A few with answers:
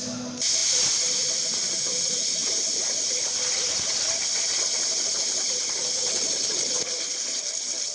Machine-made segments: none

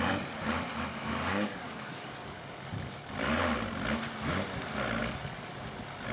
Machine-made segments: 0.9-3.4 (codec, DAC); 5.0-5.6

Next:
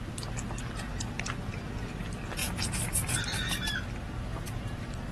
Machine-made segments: none